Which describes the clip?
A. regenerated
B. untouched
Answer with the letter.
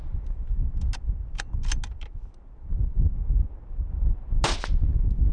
B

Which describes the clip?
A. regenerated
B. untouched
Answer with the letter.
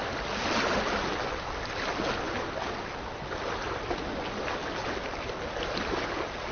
B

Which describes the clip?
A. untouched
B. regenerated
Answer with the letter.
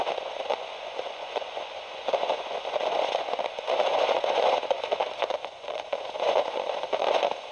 B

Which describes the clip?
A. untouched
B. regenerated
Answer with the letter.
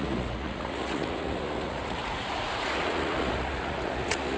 B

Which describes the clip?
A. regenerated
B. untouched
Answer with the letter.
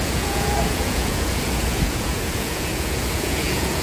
A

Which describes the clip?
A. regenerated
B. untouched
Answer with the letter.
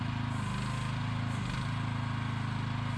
B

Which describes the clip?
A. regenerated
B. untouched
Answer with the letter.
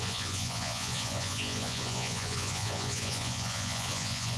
A